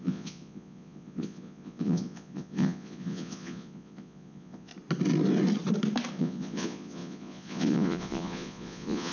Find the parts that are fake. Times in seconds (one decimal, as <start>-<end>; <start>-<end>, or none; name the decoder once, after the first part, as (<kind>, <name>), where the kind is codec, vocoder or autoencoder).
0.0-4.7 (vocoder, Vocos); 6.1-9.1